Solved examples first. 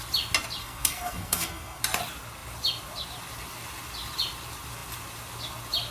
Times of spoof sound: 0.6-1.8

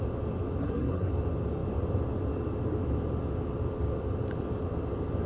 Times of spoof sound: 0.6-1.1

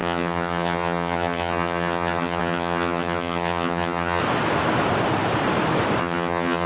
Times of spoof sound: 0.0-4.2; 6.0-6.7

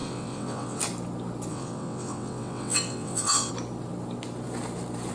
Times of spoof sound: 0.0-0.8; 1.5-3.5

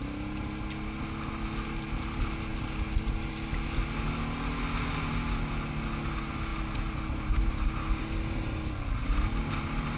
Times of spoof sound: none

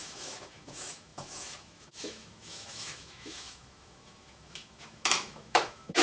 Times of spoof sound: 0.0-6.0